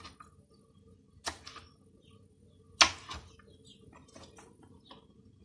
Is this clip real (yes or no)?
yes